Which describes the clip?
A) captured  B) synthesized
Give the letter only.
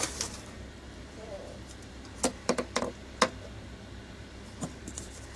B